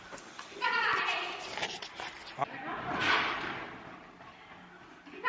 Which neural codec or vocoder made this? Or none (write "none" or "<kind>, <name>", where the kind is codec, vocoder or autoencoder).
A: none